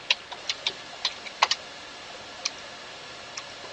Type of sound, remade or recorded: recorded